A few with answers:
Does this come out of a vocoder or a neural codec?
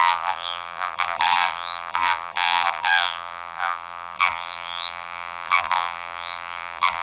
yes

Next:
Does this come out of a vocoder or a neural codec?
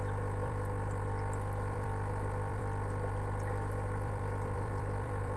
yes